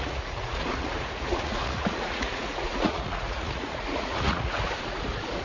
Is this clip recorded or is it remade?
remade